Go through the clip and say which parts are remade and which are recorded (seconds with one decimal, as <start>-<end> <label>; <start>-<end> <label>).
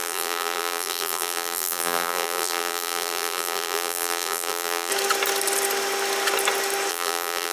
0.0-4.9 remade; 4.9-6.9 recorded; 6.9-7.5 remade